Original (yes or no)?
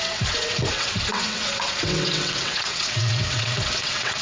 no